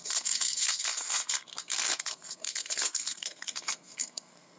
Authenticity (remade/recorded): remade